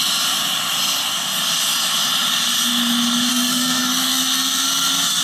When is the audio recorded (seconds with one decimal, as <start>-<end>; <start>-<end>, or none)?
0.0-3.3

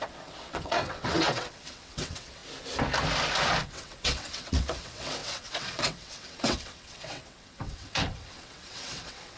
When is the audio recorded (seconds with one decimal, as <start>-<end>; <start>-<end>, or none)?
2.4-3.6

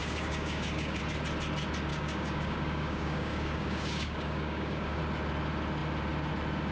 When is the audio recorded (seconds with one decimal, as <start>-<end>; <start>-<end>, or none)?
1.0-1.9; 5.0-6.7

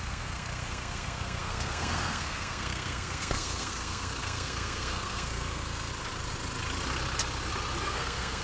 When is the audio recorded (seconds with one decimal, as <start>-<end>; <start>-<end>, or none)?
5.9-7.8

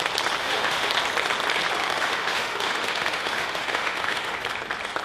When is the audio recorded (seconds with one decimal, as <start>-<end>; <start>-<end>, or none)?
0.0-0.4; 0.9-1.8; 4.4-5.0

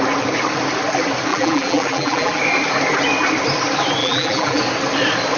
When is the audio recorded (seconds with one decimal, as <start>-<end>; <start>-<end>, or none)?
0.0-1.3; 2.4-4.0; 4.6-5.4

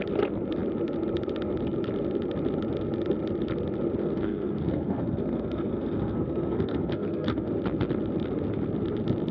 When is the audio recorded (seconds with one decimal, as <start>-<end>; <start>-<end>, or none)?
0.0-4.0; 7.5-9.3